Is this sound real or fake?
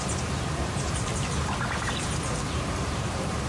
fake